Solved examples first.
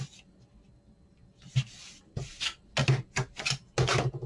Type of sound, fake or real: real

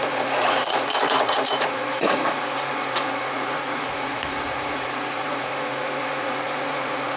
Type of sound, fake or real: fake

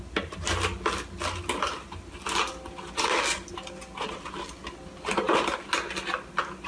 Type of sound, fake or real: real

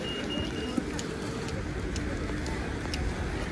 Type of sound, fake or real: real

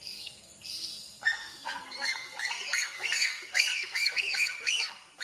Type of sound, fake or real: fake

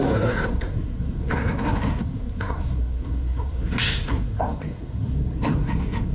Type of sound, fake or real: fake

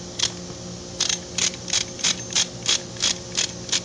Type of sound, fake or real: real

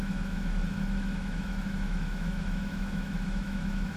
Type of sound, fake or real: fake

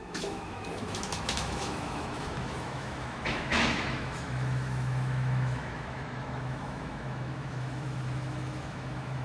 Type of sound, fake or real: fake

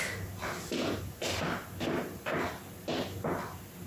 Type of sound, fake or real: real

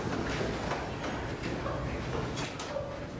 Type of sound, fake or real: real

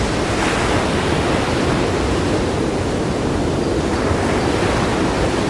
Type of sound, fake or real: real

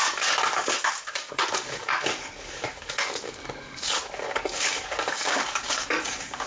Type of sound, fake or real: fake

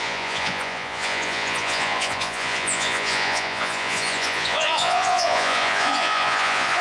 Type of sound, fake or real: fake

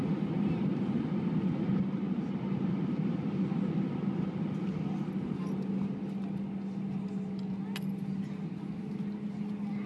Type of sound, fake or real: real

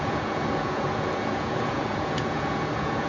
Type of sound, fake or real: fake